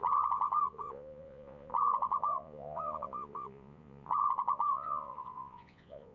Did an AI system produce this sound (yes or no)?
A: yes